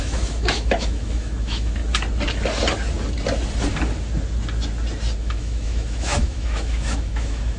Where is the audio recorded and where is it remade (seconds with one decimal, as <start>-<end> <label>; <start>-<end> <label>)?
0.0-1.8 remade; 1.8-5.2 recorded; 5.2-7.6 remade